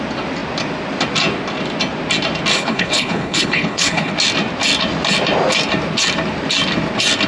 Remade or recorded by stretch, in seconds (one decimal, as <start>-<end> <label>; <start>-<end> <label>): 0.0-2.5 recorded; 2.5-4.1 remade; 4.1-7.3 recorded